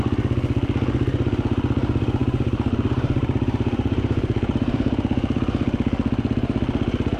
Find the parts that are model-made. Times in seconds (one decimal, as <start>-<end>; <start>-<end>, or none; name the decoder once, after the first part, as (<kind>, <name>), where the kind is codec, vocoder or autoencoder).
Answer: 2.2-5.4 (vocoder, BigVGAN v2)